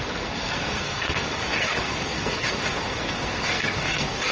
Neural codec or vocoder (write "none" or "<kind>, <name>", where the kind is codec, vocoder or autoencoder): codec, SNAC